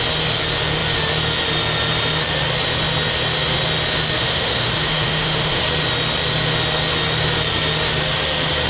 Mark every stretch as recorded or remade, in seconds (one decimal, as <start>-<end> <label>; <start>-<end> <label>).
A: 0.0-4.2 recorded; 4.2-5.6 remade; 5.6-8.7 recorded